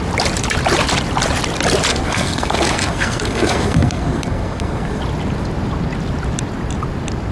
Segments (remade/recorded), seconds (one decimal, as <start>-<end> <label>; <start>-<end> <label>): 0.0-1.9 recorded; 1.9-5.0 remade; 5.0-7.3 recorded